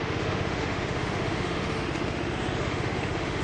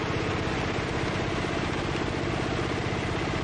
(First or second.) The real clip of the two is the second